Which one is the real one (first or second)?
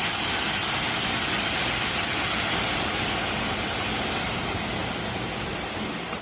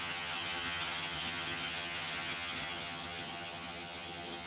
first